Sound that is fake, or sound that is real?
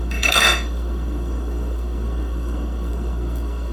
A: fake